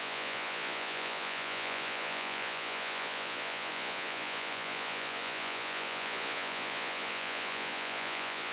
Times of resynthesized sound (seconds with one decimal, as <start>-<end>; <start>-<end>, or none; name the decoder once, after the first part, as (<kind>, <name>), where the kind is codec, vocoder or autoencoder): 0.0-8.5 (vocoder, Vocos)